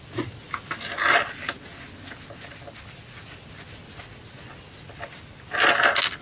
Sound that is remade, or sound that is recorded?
recorded